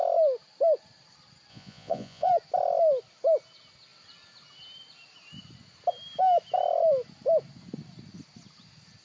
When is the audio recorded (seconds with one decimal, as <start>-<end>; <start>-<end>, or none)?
0.0-1.5; 2.3-9.0